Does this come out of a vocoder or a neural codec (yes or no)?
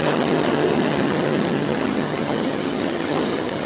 yes